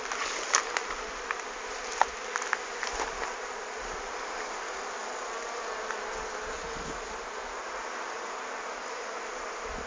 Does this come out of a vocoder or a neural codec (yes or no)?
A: no